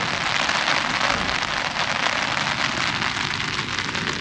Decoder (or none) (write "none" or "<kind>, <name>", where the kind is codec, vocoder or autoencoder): none